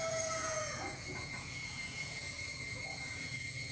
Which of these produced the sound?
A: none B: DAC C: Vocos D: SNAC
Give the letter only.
C